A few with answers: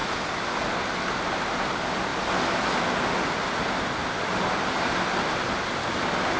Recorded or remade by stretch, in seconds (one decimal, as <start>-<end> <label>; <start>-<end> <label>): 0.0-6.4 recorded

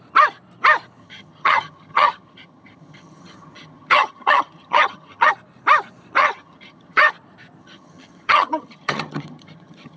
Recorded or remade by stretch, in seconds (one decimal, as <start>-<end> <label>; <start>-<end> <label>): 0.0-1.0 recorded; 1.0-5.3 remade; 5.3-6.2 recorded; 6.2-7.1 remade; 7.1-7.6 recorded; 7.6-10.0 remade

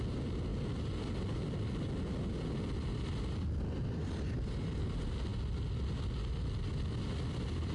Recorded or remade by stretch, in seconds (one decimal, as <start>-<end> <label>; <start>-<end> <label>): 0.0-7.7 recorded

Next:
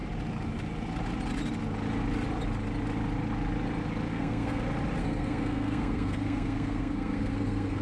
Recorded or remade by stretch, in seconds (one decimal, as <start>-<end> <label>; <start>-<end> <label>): 0.0-4.1 recorded; 4.1-4.6 remade; 4.6-5.0 recorded; 5.0-7.8 remade